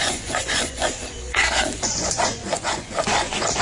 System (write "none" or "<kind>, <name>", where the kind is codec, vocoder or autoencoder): vocoder, Vocos